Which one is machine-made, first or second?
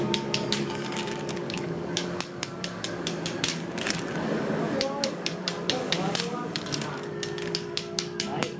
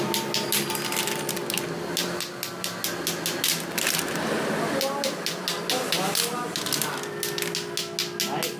first